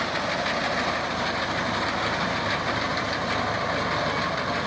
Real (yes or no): yes